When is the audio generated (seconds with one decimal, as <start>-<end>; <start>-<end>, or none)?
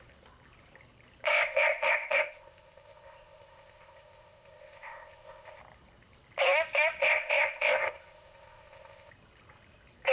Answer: 1.3-5.6; 7.0-9.1